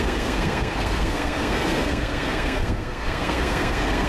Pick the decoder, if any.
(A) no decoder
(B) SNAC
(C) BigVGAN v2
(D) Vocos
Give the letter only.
B